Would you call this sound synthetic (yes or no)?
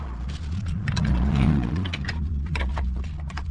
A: yes